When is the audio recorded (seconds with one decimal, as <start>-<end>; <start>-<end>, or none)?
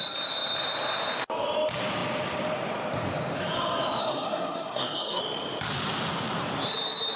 0.0-4.0; 5.2-7.2